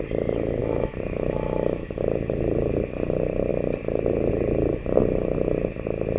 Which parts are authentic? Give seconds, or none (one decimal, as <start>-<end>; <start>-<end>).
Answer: 0.0-0.6; 2.0-6.2